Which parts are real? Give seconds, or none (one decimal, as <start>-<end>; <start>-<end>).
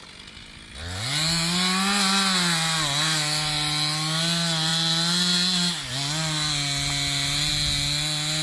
0.0-8.4